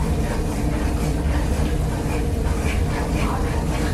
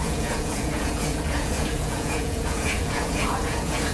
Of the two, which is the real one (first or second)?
first